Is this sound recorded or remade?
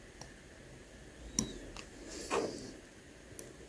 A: recorded